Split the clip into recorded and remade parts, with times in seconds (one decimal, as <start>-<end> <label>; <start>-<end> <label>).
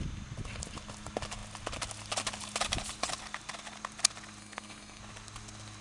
0.0-4.4 recorded; 4.4-5.0 remade; 5.0-5.8 recorded